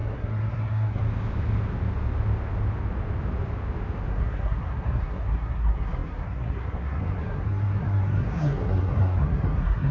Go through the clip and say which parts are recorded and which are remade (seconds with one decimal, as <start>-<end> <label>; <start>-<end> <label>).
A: 0.0-1.0 remade; 1.0-4.1 recorded; 4.1-9.9 remade